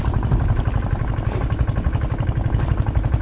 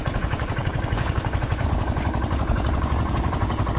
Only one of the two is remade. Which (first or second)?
second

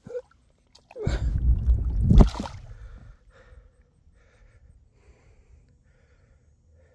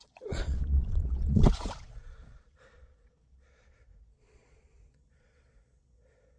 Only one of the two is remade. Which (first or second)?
second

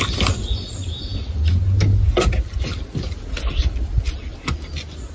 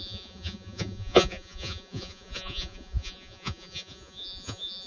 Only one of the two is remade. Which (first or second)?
second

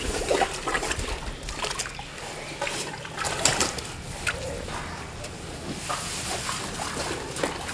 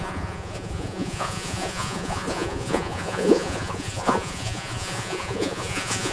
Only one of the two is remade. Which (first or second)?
second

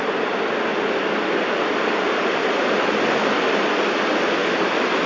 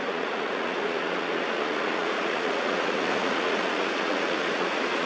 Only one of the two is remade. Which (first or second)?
second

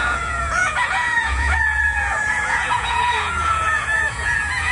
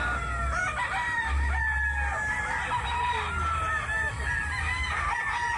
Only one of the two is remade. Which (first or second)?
first